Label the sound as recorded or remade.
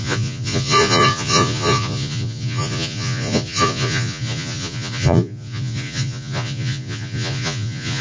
remade